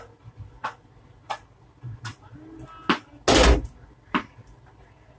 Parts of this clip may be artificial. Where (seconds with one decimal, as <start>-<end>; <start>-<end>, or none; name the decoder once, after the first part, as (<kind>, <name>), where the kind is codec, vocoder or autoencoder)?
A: none